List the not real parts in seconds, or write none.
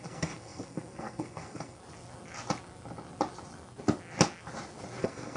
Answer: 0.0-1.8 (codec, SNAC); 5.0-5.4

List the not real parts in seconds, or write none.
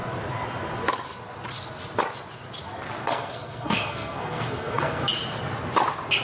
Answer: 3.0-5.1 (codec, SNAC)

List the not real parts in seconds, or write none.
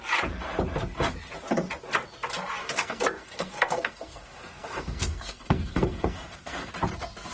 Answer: 2.6-6.7 (codec, SNAC)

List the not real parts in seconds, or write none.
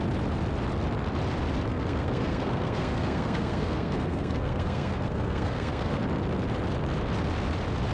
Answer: 1.7-6.0 (codec, SNAC)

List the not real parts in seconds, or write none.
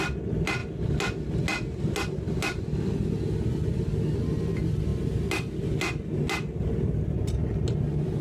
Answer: none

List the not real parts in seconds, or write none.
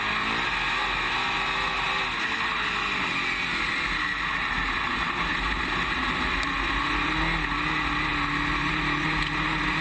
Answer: none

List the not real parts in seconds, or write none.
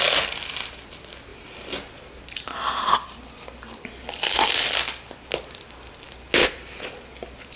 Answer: none